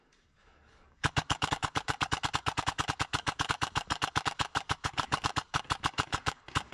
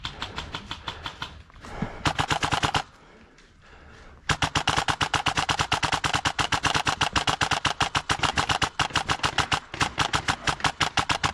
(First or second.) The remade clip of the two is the first